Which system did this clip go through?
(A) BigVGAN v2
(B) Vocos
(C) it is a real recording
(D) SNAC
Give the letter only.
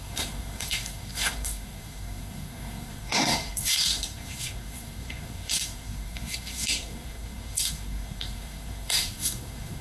D